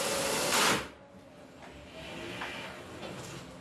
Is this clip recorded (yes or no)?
yes